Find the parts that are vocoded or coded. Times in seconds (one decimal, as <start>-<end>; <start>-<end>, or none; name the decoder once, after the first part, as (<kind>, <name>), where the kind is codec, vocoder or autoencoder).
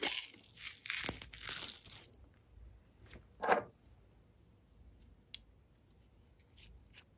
none